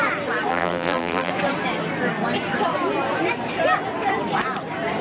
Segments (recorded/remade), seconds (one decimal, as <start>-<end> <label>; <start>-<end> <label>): 0.0-0.5 recorded; 0.5-1.3 remade; 1.3-5.0 recorded